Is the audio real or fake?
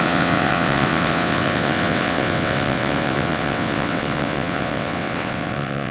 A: fake